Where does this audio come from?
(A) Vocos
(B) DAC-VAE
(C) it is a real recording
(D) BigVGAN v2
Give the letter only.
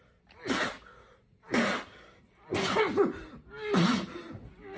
C